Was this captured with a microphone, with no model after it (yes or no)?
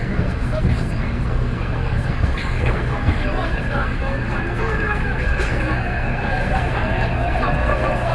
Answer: no